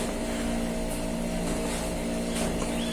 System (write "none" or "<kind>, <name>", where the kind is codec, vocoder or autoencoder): none